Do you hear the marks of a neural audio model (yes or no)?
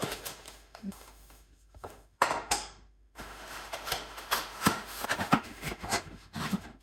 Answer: yes